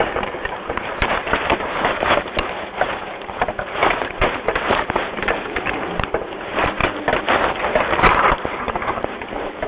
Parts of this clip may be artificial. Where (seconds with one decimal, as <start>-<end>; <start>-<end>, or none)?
0.0-6.8; 8.3-9.7